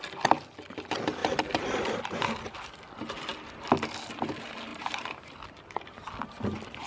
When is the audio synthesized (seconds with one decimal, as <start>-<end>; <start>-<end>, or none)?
4.7-5.3